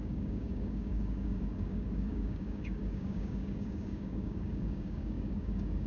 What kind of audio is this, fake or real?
fake